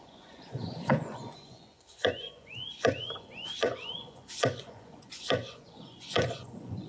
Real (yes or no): no